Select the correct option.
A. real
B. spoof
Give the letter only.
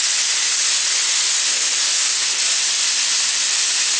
A